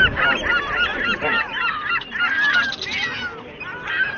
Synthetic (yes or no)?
no